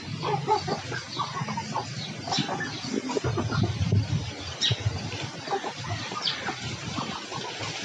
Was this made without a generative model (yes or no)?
yes